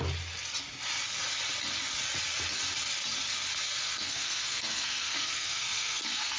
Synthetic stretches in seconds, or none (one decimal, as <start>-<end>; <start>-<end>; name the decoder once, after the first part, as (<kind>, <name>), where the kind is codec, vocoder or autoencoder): 3.8-6.4 (codec, SNAC)